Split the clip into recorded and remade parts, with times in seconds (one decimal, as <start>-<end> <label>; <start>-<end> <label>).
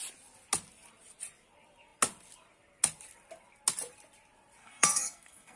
0.0-4.6 recorded; 4.6-5.6 remade